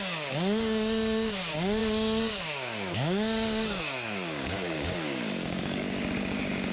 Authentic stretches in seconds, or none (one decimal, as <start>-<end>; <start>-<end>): none